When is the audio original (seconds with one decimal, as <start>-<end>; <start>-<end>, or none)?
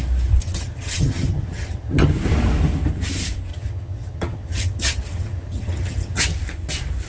0.0-0.4; 2.1-3.5; 6.2-7.1